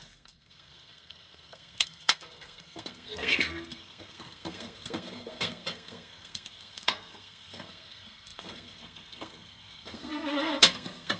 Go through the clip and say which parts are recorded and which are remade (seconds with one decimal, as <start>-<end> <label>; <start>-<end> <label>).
0.0-11.2 remade